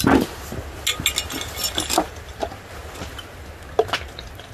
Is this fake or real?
real